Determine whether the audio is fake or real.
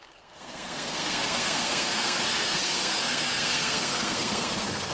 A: fake